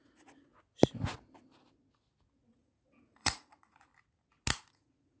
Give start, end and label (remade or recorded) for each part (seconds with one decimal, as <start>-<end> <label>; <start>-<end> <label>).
0.0-0.5 remade; 0.5-2.5 recorded; 2.5-3.9 remade; 3.9-4.7 recorded; 4.7-5.2 remade